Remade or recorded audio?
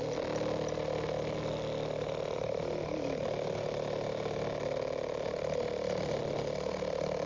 recorded